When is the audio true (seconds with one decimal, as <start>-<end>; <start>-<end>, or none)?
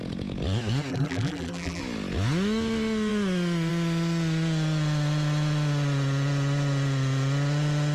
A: 0.0-0.9; 1.8-7.9